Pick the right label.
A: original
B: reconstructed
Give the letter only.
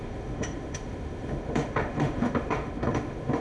B